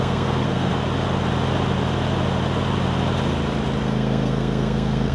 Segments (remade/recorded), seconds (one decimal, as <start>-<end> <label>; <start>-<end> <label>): 0.0-0.7 remade; 0.7-3.8 recorded; 3.8-5.1 remade